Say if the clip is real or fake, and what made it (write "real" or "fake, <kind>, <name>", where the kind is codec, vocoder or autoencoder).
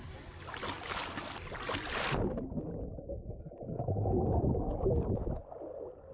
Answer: real